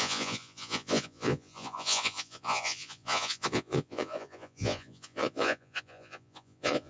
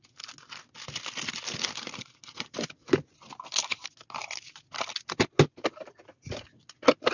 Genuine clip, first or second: second